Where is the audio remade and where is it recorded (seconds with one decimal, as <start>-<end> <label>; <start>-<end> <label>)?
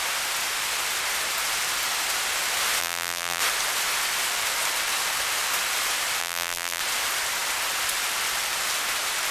0.0-2.8 recorded; 2.8-3.4 remade; 3.4-6.2 recorded; 6.2-6.8 remade; 6.8-9.3 recorded